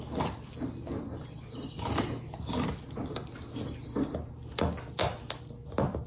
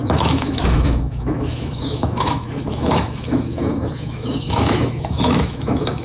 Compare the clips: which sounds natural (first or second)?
first